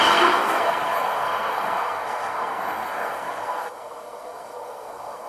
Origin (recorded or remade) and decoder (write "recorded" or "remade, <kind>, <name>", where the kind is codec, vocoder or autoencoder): remade, codec, SNAC